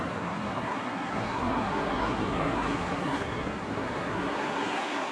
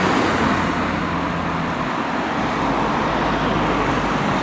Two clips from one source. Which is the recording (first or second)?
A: second